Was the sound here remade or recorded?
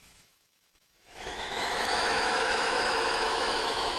remade